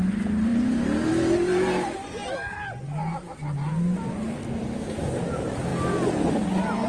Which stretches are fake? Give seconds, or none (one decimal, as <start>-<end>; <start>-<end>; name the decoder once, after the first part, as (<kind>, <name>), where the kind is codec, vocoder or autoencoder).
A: none